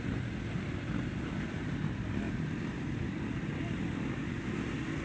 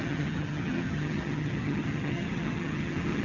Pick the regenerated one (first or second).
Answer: second